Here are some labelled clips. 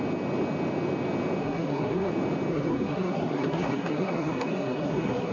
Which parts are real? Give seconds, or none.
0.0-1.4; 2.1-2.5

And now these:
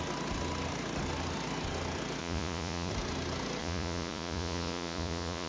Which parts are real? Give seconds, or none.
0.0-2.2; 2.9-3.6